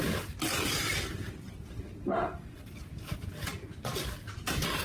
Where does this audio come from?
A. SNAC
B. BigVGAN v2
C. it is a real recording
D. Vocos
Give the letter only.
C